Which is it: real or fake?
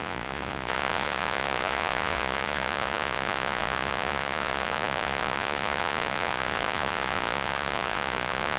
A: fake